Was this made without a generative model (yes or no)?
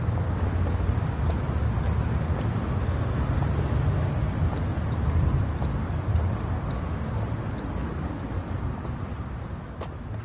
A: yes